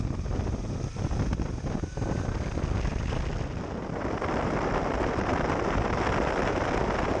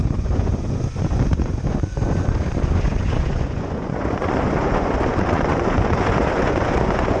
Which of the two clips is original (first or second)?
first